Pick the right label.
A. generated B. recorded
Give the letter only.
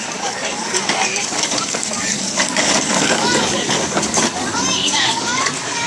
A